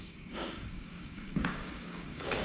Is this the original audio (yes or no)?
no